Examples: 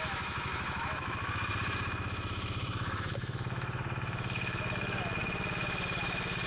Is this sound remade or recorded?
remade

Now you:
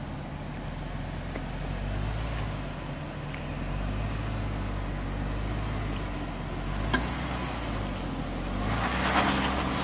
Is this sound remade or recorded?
recorded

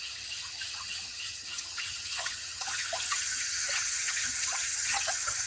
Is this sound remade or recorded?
remade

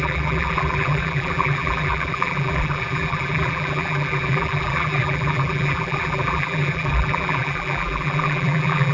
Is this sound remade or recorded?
remade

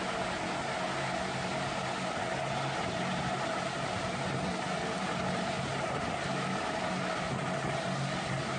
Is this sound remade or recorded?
remade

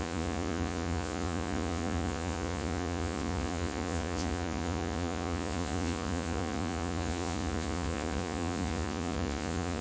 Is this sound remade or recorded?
remade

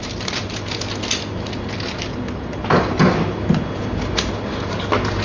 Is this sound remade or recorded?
recorded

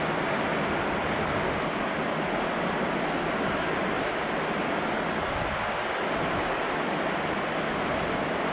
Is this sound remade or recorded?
recorded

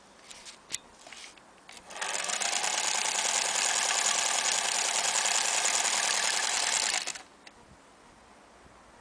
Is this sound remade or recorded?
recorded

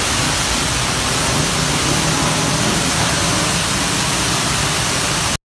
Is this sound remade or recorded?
recorded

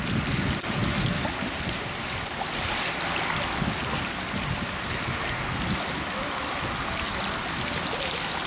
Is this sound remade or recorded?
recorded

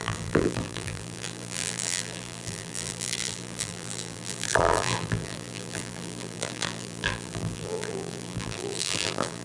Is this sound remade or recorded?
remade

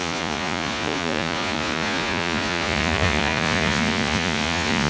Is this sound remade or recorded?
remade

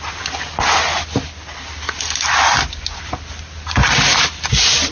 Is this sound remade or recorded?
recorded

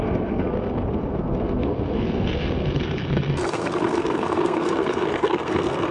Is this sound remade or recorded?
remade